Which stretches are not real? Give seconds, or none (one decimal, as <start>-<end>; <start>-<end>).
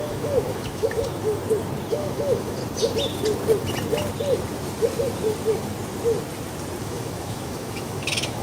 0.0-1.4; 1.9-2.6; 6.8-8.4